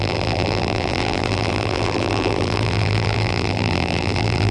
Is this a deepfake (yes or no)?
yes